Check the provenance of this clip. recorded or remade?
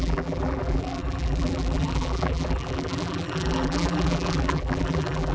remade